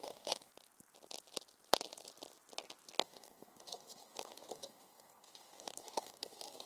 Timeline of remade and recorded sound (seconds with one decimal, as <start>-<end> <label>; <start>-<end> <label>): 0.0-0.5 remade; 0.5-3.0 recorded; 3.0-6.7 remade

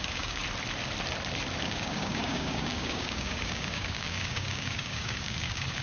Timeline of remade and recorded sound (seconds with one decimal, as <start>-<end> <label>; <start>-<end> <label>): 0.0-0.4 remade; 0.4-1.6 recorded; 1.6-5.8 remade

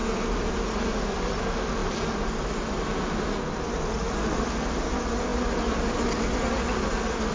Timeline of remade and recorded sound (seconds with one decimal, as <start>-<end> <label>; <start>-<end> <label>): 0.0-7.3 recorded

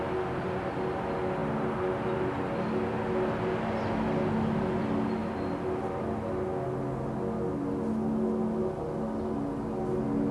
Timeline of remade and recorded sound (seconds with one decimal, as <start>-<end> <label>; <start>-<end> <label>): 0.0-10.3 recorded

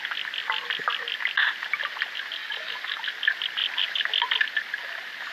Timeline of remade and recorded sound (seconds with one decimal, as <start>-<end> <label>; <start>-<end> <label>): 0.0-2.4 recorded; 2.4-3.0 remade; 3.0-5.3 recorded